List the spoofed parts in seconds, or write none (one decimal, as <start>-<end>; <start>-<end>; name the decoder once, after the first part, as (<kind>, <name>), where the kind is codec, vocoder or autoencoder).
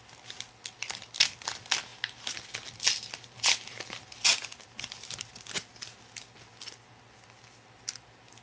none